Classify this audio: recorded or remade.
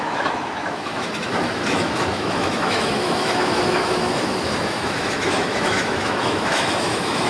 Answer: remade